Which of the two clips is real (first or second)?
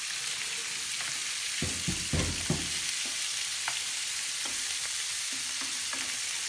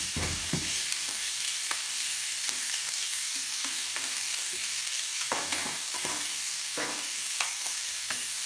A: first